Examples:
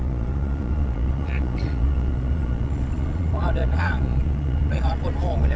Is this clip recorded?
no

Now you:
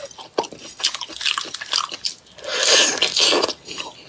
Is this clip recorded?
yes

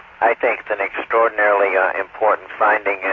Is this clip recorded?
yes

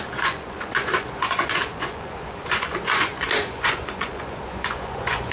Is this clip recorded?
no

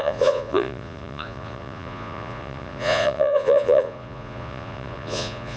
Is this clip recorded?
no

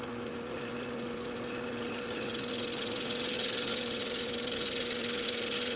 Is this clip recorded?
yes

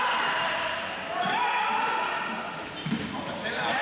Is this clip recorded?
yes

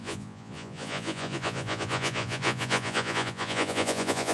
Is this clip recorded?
no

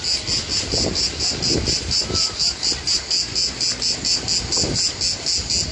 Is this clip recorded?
yes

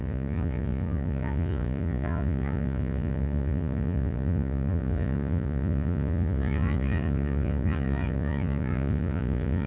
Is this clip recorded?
no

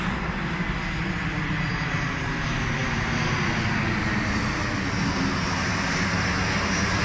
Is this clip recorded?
yes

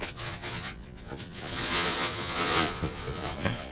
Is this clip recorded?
no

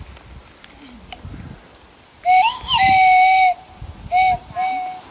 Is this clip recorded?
yes